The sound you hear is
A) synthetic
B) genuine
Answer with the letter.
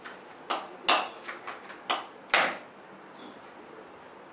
B